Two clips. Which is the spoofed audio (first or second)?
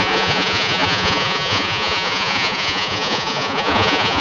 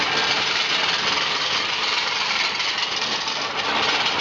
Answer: first